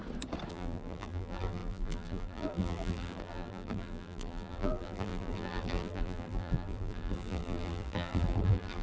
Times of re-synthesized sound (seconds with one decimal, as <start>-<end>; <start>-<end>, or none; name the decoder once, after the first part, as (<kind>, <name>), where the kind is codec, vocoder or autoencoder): 0.5-8.8 (vocoder, BigVGAN v2)